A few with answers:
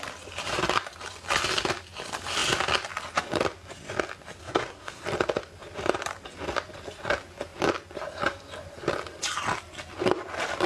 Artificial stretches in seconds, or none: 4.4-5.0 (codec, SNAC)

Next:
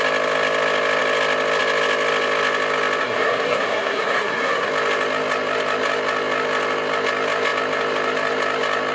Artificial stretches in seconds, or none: 3.0-4.7 (codec, SNAC)

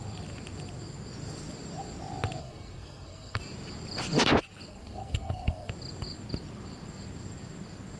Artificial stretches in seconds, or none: 2.4-3.4 (codec, SNAC); 4.7-5.7

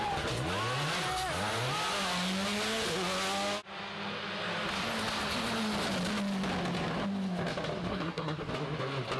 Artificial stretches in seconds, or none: 7.9-8.5 (codec, SNAC)

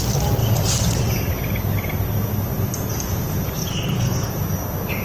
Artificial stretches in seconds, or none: 3.7-4.3 (codec, SNAC)

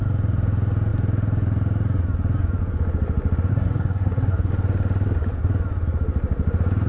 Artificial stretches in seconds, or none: 3.5-4.5 (codec, SNAC)

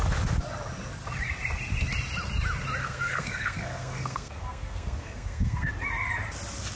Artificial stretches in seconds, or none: 2.8-5.7 (codec, SNAC)

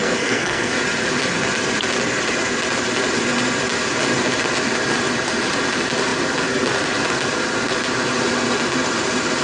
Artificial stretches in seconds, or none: 0.0-0.7 (codec, SNAC)